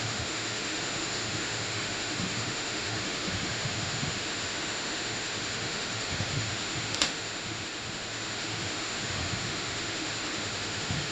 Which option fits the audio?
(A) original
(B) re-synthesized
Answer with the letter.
B